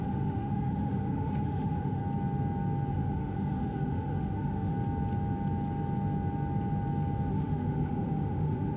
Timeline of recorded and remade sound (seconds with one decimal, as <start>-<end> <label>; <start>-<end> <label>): 0.0-2.0 remade; 2.0-2.9 recorded; 2.9-4.7 remade; 4.7-7.3 recorded; 7.3-8.8 remade

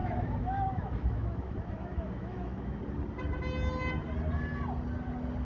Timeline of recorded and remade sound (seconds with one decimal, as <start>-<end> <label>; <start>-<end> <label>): 0.0-2.8 remade; 2.8-5.4 recorded

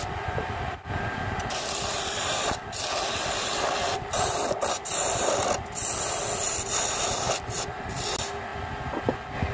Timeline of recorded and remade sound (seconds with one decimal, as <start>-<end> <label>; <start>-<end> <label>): 0.0-9.5 recorded

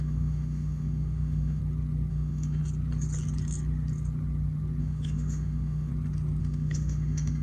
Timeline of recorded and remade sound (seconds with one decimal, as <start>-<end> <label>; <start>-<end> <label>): 0.0-1.6 remade; 1.6-2.1 recorded; 2.1-2.6 remade; 2.6-4.8 recorded; 4.8-5.9 remade; 5.9-6.4 recorded; 6.4-7.4 remade